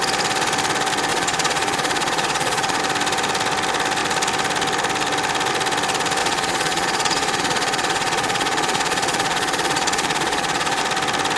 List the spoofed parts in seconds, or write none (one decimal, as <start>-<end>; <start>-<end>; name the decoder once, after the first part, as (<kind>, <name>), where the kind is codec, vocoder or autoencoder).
1.1-2.8 (vocoder, Vocos); 6.2-10.8